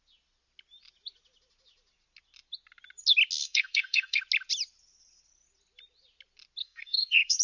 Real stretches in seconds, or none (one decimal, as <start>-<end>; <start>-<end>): 0.0-3.4; 4.2-6.6